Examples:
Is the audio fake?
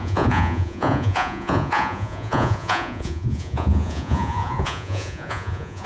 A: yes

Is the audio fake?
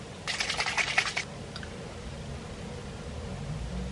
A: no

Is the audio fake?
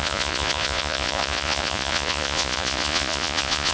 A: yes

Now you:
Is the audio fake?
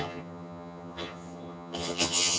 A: yes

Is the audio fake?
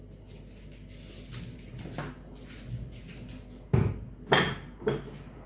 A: no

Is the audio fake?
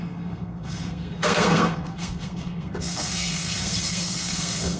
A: yes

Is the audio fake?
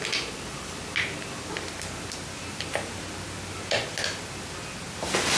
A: no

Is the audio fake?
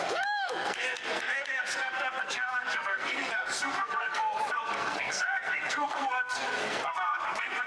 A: yes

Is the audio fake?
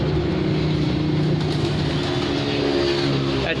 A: no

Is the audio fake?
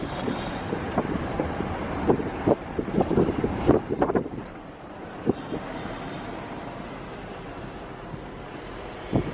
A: yes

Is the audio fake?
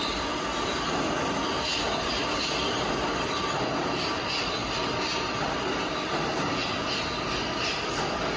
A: no